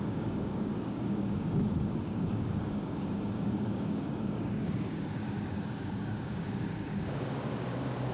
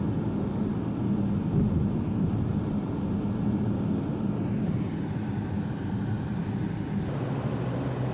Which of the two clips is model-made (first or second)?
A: first